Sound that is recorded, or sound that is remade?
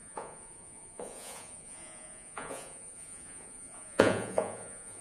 remade